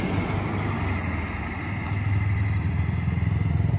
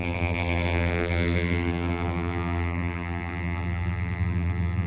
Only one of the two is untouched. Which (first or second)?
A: first